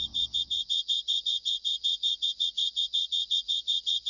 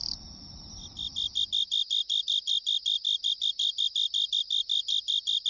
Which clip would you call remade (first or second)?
first